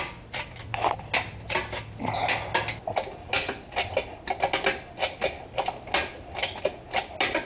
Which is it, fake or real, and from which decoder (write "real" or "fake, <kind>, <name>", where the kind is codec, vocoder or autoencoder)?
real